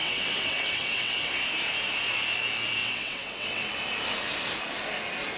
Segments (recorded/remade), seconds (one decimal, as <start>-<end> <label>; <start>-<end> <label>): 0.0-1.3 remade; 1.3-2.8 recorded; 2.8-3.7 remade; 3.7-5.4 recorded

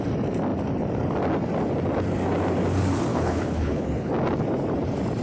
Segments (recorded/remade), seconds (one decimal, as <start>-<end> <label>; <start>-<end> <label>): 0.0-3.1 recorded; 3.1-4.1 remade; 4.1-5.2 recorded

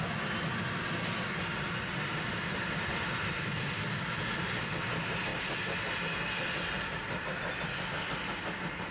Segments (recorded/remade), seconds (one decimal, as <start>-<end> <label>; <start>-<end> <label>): 0.0-1.9 recorded; 1.9-3.9 remade; 3.9-8.9 recorded

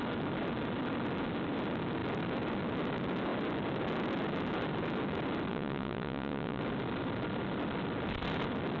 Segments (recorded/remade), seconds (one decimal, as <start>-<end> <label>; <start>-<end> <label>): 0.0-5.5 recorded; 5.5-6.6 remade; 6.6-8.8 recorded

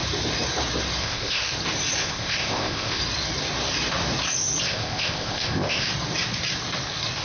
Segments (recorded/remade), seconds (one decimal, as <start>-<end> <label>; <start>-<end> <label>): 0.0-1.0 recorded; 1.0-1.4 remade; 1.4-2.0 recorded; 2.0-3.0 remade; 3.0-4.6 recorded; 4.6-5.9 remade; 5.9-7.2 recorded

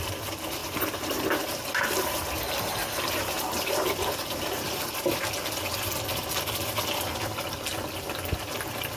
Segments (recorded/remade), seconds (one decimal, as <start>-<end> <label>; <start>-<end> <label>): 0.0-0.6 recorded; 0.6-5.3 remade; 5.3-9.0 recorded